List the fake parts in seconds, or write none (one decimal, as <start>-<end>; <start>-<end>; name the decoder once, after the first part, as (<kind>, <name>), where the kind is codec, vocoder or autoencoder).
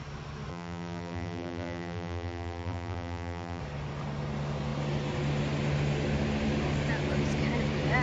0.5-3.6 (vocoder, BigVGAN v2)